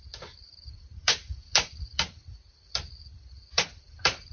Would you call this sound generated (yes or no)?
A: yes